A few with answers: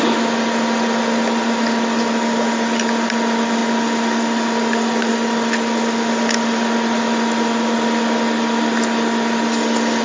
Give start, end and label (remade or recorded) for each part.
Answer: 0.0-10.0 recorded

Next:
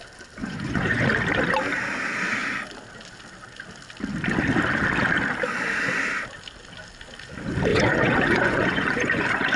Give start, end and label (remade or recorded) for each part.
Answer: 0.0-0.4 recorded; 0.4-1.0 remade; 1.0-7.7 recorded; 7.7-9.6 remade

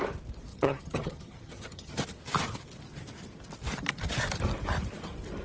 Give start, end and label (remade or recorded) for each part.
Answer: 0.0-0.5 recorded; 0.5-1.9 remade; 1.9-5.4 recorded